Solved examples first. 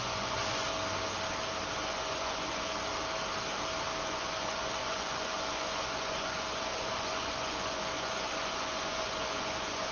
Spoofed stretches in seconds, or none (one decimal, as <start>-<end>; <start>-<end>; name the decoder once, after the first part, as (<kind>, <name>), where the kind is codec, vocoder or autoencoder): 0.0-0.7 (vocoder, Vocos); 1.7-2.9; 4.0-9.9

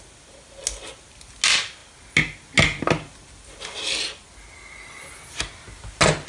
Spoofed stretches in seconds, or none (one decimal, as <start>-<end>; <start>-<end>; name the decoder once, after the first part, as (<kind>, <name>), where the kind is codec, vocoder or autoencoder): none

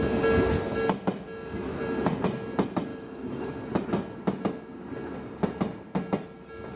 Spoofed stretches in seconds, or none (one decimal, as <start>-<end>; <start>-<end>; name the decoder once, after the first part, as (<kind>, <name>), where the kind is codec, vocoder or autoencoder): 2.9-3.5 (autoencoder, DAC-VAE)